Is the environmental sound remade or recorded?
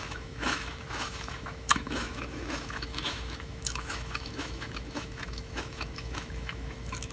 remade